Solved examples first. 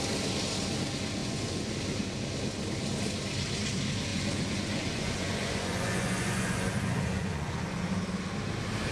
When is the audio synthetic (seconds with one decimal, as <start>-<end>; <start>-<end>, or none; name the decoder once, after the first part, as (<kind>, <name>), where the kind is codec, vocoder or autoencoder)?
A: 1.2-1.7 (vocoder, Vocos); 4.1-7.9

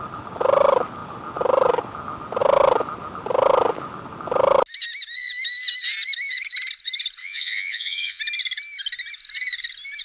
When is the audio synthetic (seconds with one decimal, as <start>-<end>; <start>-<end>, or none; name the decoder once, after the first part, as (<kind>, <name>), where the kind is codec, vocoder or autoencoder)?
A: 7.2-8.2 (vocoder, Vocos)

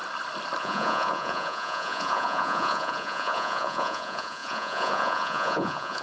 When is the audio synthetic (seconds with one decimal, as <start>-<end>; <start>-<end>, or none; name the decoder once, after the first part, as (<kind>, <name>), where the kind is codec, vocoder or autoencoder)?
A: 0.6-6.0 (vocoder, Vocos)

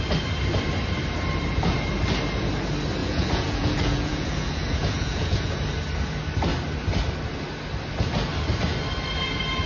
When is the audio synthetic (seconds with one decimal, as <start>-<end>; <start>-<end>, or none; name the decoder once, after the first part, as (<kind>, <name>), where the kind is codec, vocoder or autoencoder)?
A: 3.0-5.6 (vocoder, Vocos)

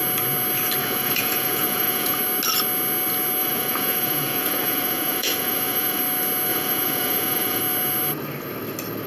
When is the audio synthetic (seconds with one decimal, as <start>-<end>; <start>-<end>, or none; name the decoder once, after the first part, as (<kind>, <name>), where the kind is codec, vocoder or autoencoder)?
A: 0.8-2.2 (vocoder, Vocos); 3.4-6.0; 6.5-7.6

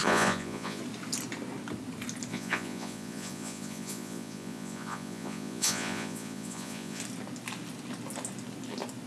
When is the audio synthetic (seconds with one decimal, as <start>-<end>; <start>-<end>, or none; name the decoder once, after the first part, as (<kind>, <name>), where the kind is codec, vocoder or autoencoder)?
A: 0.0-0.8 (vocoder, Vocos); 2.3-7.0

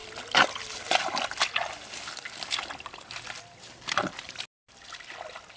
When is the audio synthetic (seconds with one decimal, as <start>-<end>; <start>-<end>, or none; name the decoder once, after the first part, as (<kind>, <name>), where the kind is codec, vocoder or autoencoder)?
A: none